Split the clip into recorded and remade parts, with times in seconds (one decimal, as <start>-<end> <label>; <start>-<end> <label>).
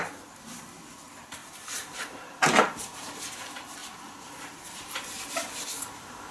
0.0-1.4 recorded; 1.4-2.4 remade; 2.4-6.3 recorded